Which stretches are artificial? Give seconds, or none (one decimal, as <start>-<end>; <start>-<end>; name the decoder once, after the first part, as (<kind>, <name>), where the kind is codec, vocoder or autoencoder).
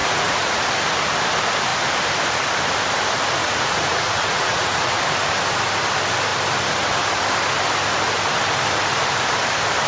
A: 0.0-0.6 (vocoder, Vocos); 3.4-5.0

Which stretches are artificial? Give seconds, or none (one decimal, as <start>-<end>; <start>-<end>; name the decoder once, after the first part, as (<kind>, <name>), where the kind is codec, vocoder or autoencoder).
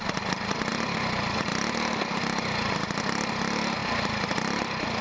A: none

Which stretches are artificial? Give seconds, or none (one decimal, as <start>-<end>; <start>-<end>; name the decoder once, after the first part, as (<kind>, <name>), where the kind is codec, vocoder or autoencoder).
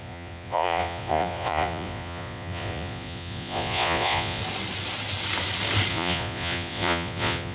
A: 0.0-4.4 (vocoder, Vocos); 5.9-7.5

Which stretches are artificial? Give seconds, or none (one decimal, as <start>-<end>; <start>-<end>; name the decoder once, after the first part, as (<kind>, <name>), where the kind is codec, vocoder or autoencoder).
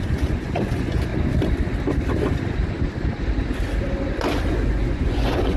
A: 0.0-1.1 (vocoder, Vocos); 4.5-5.6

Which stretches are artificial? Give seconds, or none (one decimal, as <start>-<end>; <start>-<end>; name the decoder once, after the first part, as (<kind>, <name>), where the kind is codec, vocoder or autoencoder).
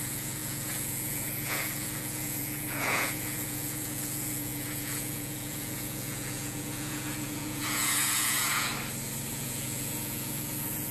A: 0.0-8.7 (vocoder, Vocos); 9.3-10.9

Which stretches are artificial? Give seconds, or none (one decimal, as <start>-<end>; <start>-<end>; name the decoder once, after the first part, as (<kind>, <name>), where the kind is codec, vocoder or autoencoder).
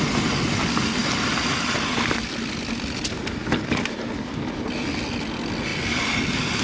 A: none